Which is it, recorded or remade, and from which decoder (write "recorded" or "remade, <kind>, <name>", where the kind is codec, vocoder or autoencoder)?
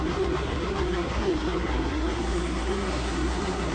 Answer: remade, codec, SNAC